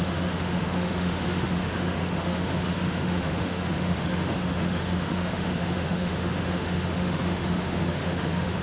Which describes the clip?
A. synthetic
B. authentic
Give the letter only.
A